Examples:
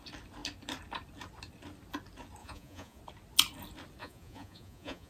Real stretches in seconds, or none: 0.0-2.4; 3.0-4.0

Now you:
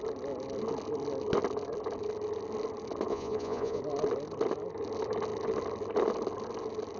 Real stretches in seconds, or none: 0.0-3.1; 3.8-7.0

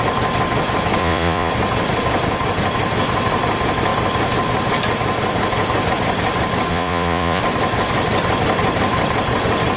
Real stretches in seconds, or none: 0.0-1.0; 1.5-6.7; 7.4-9.8